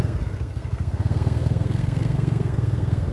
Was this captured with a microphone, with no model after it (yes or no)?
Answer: no